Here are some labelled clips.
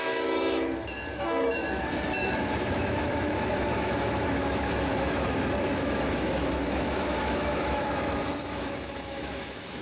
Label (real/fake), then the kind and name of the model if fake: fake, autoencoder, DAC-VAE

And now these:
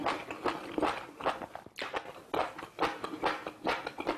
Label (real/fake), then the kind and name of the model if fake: real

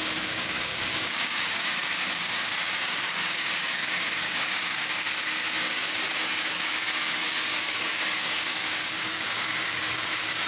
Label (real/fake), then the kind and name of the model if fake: fake, codec, DAC